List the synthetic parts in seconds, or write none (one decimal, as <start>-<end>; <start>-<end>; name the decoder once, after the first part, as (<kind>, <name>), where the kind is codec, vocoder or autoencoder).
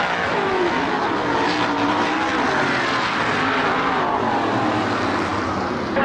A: 0.0-0.6 (autoencoder, DAC-VAE)